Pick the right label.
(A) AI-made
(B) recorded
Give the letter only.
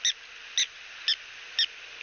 B